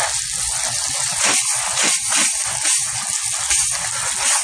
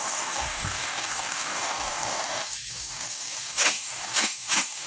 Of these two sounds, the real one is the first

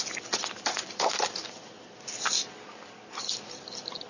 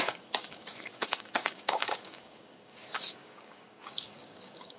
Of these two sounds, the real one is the first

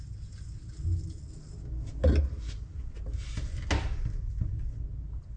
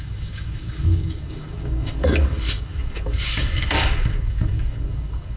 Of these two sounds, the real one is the first